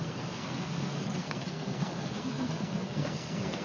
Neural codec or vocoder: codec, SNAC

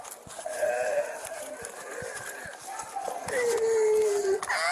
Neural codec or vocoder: none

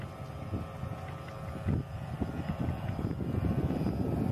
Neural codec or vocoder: none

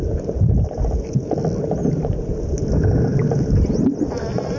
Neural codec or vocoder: none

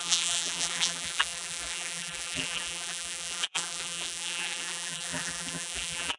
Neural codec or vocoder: vocoder, BigVGAN v2